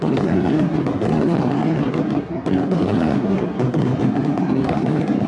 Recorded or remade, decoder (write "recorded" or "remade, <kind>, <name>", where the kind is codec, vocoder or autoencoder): remade, codec, SNAC